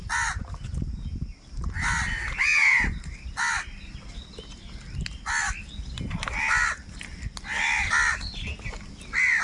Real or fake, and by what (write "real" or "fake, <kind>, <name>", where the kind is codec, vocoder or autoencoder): real